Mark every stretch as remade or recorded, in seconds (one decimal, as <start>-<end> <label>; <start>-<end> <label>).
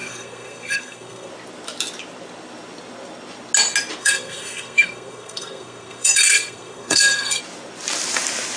0.0-1.3 remade; 1.3-4.0 recorded; 4.0-7.4 remade; 7.4-8.6 recorded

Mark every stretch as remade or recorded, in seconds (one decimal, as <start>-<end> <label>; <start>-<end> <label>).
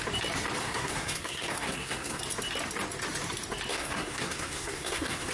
0.0-0.6 recorded; 0.6-2.2 remade; 2.2-3.7 recorded; 3.7-5.3 remade